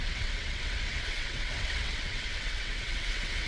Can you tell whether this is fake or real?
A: fake